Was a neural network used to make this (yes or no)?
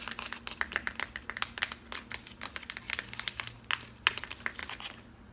no